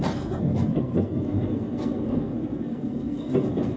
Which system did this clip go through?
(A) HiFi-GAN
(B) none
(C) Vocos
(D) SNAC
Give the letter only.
D